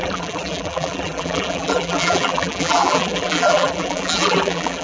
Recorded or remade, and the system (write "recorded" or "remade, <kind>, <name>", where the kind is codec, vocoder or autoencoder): remade, vocoder, BigVGAN v2